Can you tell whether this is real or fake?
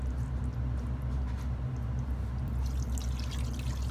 real